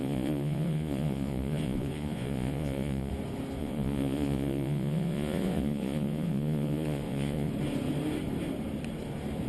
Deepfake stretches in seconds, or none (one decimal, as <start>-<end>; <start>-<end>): 0.0-3.1; 3.6-7.5